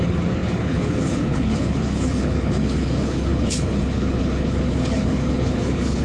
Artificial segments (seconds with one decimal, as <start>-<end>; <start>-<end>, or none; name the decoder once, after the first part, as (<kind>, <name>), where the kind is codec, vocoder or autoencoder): 0.0-6.0 (codec, HILCodec)